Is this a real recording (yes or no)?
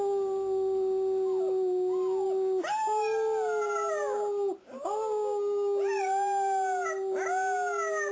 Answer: yes